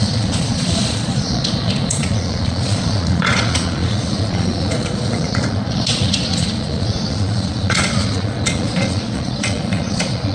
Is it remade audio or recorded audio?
remade